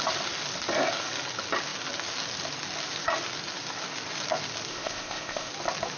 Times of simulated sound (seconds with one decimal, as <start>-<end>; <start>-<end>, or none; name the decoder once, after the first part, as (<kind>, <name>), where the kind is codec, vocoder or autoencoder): 4.7-5.5 (codec, ZipCodec)